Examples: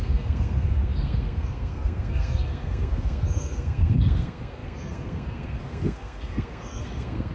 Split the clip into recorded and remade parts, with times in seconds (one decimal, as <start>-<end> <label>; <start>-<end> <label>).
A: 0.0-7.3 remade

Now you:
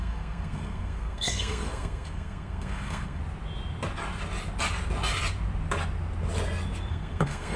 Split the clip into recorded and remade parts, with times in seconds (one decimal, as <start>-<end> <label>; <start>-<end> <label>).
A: 0.0-3.2 remade; 3.2-6.9 recorded; 6.9-7.6 remade

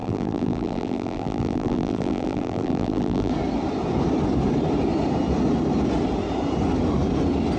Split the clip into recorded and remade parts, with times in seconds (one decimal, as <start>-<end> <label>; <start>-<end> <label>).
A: 0.0-3.3 remade; 3.3-7.6 recorded

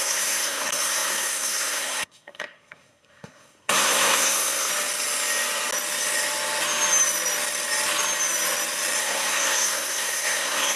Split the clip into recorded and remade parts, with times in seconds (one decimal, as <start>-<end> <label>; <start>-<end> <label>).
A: 0.0-4.7 remade; 4.7-9.0 recorded; 9.0-10.8 remade

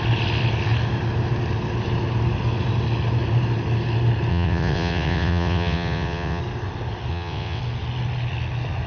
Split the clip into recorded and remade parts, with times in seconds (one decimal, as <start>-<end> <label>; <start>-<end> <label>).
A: 0.0-4.3 recorded; 4.3-6.4 remade; 6.4-7.1 recorded; 7.1-7.6 remade; 7.6-8.9 recorded

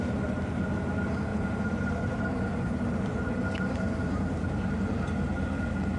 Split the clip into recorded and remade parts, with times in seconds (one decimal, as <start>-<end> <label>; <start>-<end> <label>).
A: 0.0-1.3 recorded; 1.3-4.9 remade; 4.9-6.0 recorded

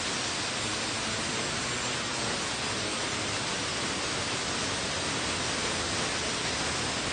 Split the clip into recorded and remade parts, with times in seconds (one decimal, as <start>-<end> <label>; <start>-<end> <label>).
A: 0.0-7.1 recorded